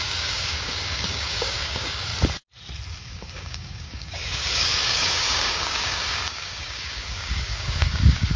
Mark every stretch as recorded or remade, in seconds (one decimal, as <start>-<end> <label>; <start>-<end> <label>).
0.0-2.1 remade; 2.1-3.0 recorded; 3.0-8.4 remade